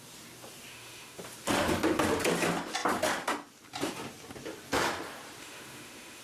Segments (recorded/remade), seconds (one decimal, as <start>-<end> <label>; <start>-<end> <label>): 0.0-0.7 recorded; 0.7-1.2 remade; 1.2-5.4 recorded; 5.4-6.2 remade

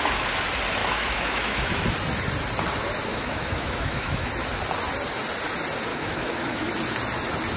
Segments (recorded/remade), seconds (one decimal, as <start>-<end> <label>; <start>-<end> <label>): 0.0-0.8 recorded; 0.8-1.8 remade; 1.8-3.1 recorded; 3.1-4.3 remade; 4.3-5.9 recorded; 5.9-6.7 remade; 6.7-7.6 recorded